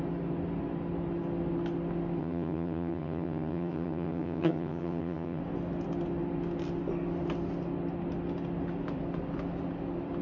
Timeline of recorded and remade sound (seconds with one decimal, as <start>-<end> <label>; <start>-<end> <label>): 0.0-2.2 recorded; 2.2-5.4 remade; 5.4-10.2 recorded